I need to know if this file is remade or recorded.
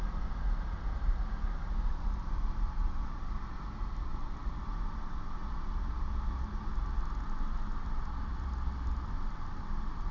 recorded